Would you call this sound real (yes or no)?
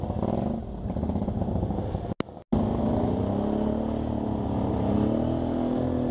yes